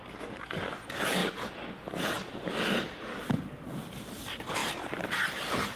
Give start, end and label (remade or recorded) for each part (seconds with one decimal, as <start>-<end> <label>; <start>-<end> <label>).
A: 0.0-1.2 remade; 1.2-3.9 recorded; 3.9-5.8 remade

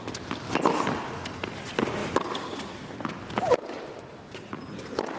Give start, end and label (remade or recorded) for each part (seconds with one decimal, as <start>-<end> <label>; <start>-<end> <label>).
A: 0.0-5.2 recorded